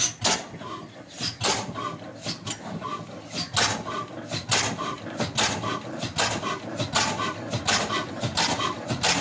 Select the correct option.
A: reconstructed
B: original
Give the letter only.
B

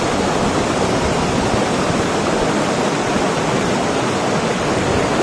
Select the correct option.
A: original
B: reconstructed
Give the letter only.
A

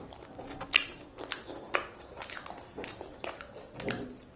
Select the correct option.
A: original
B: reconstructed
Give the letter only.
A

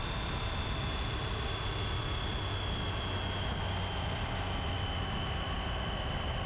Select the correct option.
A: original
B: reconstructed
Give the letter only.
A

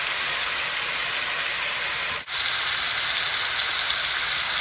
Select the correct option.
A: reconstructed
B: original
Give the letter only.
B